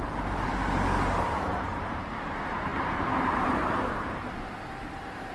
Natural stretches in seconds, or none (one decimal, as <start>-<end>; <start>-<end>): 0.5-1.6